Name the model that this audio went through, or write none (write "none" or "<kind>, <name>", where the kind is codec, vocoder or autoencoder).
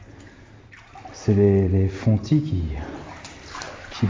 vocoder, BigVGAN v2